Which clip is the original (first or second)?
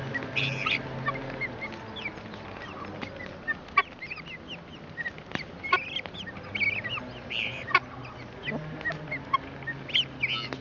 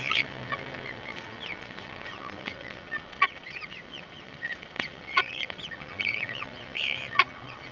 first